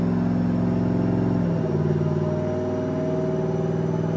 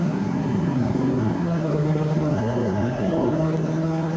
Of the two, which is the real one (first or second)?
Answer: first